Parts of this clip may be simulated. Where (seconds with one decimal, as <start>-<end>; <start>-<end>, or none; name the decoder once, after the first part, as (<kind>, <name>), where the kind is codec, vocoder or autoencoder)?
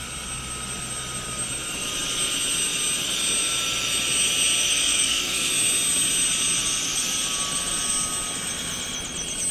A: 4.7-5.5 (codec, SNAC)